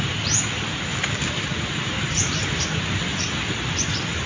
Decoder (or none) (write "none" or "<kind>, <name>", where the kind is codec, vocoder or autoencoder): none